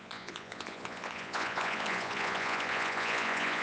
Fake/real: fake